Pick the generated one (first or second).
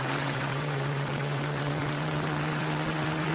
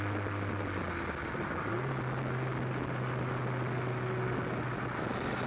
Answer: first